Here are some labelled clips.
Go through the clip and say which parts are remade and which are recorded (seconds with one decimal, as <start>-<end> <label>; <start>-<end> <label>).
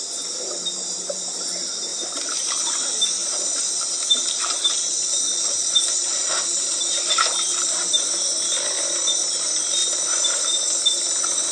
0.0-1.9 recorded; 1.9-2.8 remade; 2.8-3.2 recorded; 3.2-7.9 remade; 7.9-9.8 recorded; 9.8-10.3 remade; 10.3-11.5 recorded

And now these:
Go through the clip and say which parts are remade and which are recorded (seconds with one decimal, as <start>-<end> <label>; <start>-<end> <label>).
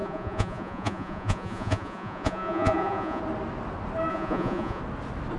0.0-3.2 remade; 3.2-4.1 recorded; 4.1-4.8 remade; 4.8-5.4 recorded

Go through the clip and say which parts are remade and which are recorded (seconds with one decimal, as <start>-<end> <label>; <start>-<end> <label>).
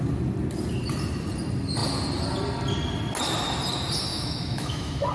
0.0-4.1 recorded; 4.1-5.1 remade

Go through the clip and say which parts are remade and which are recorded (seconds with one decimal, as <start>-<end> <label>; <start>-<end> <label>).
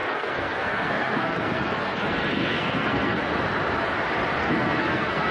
0.0-3.2 remade; 3.2-4.4 recorded; 4.4-5.3 remade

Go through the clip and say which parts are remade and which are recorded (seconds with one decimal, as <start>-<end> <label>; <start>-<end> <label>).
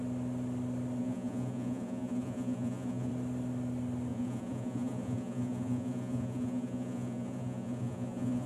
0.0-1.0 recorded; 1.0-3.1 remade; 3.1-4.1 recorded; 4.1-8.5 remade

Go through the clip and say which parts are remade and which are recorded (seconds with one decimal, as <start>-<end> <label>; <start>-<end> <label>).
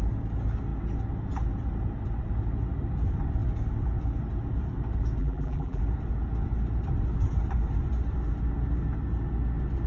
0.0-5.2 recorded; 5.2-5.8 remade; 5.8-9.9 recorded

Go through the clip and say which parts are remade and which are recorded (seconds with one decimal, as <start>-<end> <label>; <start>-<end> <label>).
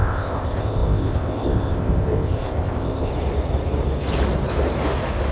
0.0-3.1 remade; 3.1-5.3 recorded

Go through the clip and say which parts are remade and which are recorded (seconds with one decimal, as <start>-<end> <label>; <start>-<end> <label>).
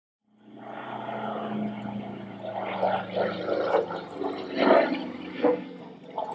0.0-5.3 recorded; 5.3-5.8 remade; 5.8-6.3 recorded